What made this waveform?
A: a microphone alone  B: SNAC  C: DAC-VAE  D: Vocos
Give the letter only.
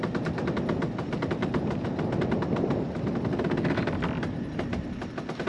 A